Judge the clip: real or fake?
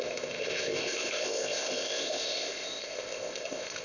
fake